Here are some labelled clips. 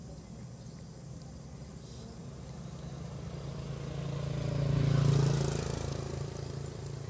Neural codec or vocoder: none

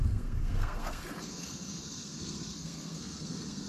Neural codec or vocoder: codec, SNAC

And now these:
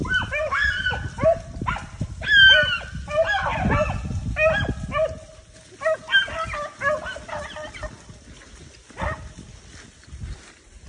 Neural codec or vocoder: none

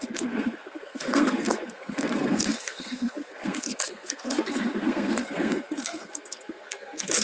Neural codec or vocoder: codec, SNAC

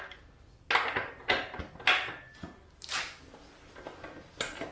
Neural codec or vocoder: none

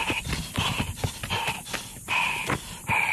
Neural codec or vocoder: none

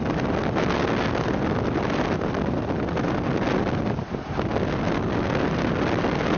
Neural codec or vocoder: none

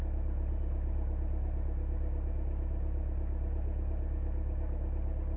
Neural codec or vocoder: none